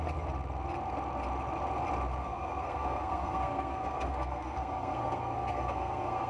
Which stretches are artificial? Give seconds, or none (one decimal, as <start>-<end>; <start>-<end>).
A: 2.2-6.3